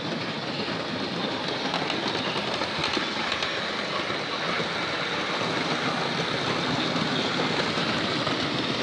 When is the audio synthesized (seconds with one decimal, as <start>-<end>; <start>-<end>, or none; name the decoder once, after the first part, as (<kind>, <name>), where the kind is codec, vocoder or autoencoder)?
none